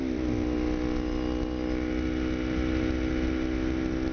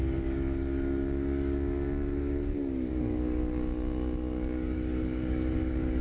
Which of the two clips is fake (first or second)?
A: second